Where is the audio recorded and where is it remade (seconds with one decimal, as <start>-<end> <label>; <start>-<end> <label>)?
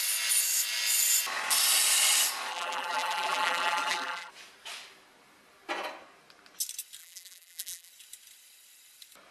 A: 0.0-2.5 recorded; 2.5-4.3 remade; 4.3-7.0 recorded; 7.0-7.9 remade; 7.9-9.3 recorded